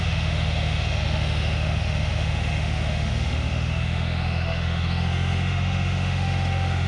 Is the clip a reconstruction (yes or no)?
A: yes